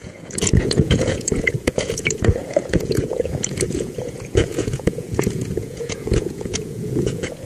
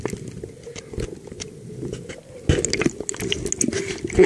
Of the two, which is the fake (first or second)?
first